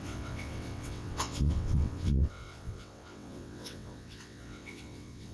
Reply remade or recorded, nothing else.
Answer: remade